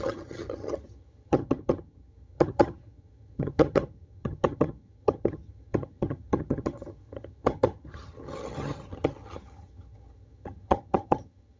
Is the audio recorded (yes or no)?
no